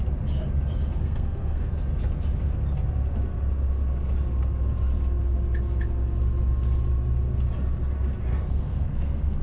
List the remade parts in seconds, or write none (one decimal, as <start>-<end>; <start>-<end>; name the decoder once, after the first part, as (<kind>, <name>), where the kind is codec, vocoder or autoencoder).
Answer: 1.0-1.7 (codec, SNAC); 8.3-9.4